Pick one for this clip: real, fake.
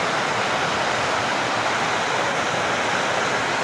real